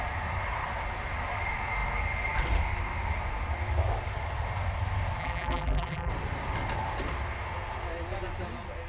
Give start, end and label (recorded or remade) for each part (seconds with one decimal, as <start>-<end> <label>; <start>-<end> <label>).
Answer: 0.0-5.2 recorded; 5.2-6.1 remade; 6.1-8.9 recorded